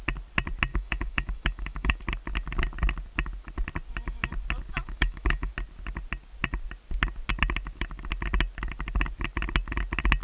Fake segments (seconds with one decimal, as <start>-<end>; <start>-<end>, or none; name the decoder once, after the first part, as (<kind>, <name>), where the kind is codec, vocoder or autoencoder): 0.7-2.0 (autoencoder, DAC-VAE); 4.7-5.5